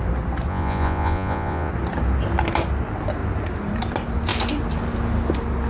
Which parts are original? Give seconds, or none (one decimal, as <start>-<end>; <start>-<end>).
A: 0.0-0.5; 1.7-5.7